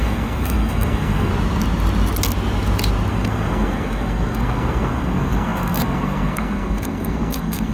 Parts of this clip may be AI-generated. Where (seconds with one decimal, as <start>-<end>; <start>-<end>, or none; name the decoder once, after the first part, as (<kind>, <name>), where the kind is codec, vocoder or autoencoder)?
0.0-1.3 (codec, SNAC); 3.1-7.7